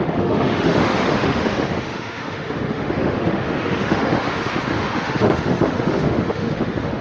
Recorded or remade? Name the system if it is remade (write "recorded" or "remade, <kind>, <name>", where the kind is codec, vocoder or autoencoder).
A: remade, autoencoder, DAC-VAE